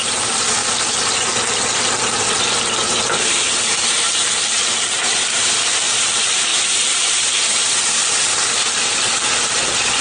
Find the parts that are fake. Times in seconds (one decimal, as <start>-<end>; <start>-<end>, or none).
0.0-0.6; 2.4-8.6